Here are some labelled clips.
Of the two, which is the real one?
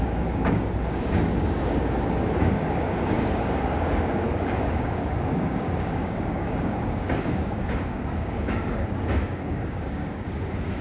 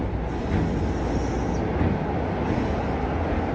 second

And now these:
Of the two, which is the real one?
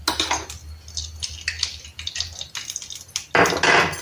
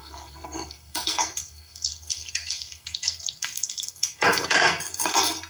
first